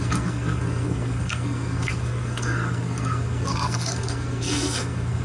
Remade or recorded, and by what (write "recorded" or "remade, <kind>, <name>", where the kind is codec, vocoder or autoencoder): remade, codec, SNAC